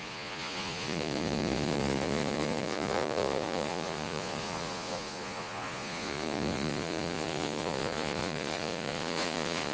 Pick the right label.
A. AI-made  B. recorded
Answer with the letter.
A